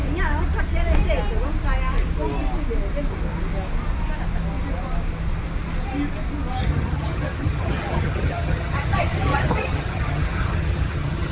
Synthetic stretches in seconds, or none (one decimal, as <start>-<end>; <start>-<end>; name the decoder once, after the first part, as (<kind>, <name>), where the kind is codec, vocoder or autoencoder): 6.6-11.3 (vocoder, HiFi-GAN)